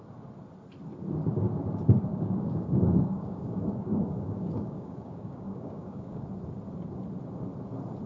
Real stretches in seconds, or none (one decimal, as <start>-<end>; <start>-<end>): 0.0-2.1; 6.3-8.1